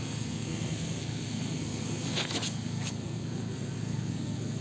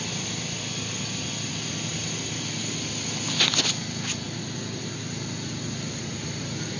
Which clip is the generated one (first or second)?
first